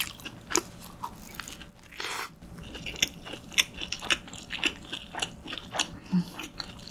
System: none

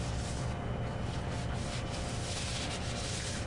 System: none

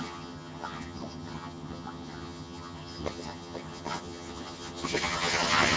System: vocoder, HiFi-GAN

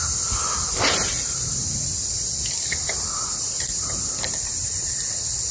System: none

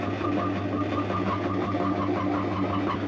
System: none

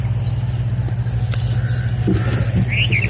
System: none